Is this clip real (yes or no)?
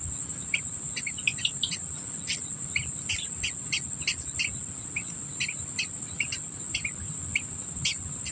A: yes